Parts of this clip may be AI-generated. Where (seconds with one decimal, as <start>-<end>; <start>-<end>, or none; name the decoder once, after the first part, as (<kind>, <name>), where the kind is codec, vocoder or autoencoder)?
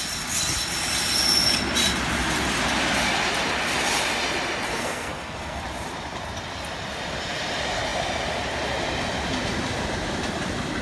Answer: 4.7-5.6 (codec, SNAC)